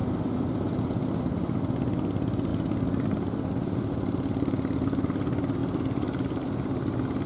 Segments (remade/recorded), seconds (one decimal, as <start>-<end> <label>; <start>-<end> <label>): 0.0-7.3 recorded